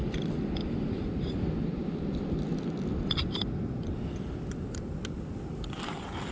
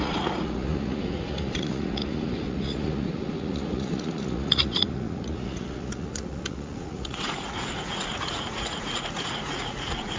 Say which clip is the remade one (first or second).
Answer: second